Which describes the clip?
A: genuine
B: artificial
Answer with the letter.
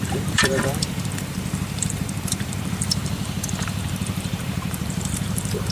B